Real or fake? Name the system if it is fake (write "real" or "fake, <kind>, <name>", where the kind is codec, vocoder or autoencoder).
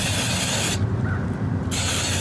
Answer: fake, vocoder, BigVGAN v2